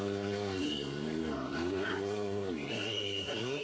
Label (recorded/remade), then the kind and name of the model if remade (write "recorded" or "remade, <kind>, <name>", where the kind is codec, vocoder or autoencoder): remade, codec, SNAC